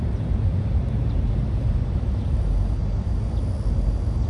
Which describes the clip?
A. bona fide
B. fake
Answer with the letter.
A